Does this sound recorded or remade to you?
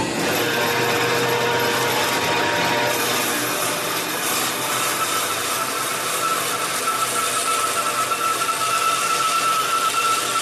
recorded